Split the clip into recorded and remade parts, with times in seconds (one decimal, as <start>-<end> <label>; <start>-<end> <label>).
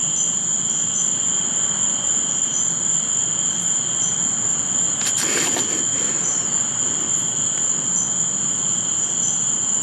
0.0-9.8 recorded